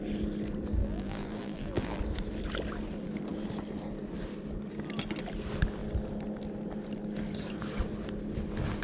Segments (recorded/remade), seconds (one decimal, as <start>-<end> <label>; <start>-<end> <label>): 0.0-0.8 recorded; 0.8-2.0 remade; 2.0-8.8 recorded